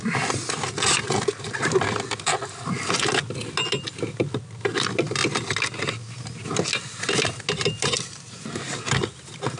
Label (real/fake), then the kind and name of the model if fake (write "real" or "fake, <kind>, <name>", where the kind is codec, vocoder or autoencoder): real